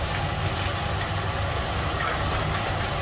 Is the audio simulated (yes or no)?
no